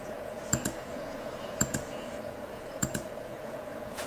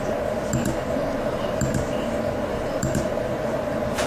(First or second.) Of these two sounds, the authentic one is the second